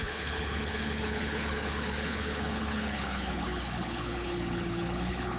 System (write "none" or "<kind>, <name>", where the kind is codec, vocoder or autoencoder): codec, HILCodec